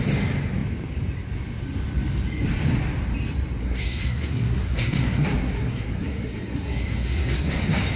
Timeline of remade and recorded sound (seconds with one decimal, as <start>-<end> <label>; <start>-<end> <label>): 0.0-3.6 recorded; 3.6-7.6 remade; 7.6-8.0 recorded